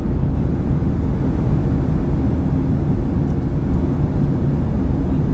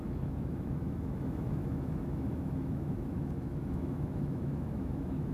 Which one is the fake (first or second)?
second